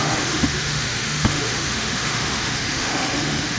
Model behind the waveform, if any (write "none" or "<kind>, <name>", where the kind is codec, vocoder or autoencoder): autoencoder, DAC-VAE